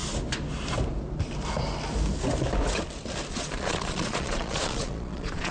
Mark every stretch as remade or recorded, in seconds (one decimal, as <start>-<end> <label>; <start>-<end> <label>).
0.0-3.3 recorded; 3.3-5.5 remade